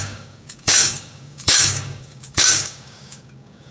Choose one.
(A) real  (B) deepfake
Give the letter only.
B